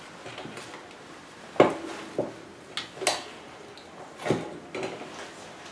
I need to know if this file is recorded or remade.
recorded